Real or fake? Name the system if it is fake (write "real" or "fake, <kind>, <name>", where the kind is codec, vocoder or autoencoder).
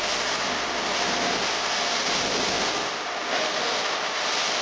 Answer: real